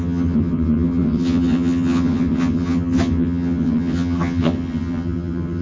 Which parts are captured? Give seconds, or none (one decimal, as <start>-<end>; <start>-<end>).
none